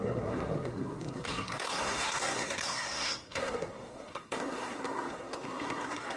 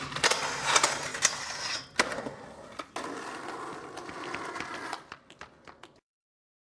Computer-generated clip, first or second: first